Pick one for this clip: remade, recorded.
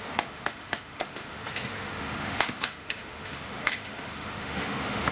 remade